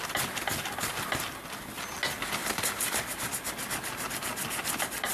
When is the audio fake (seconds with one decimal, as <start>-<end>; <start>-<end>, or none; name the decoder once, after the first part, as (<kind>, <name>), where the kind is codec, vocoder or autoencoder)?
2.4-3.3 (vocoder, BigVGAN v2)